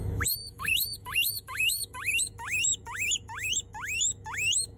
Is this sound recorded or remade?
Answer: remade